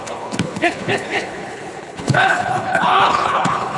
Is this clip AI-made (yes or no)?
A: yes